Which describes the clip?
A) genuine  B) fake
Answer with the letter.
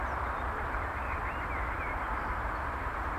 A